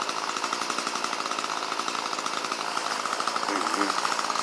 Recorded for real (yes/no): yes